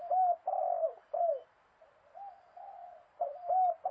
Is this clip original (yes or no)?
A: yes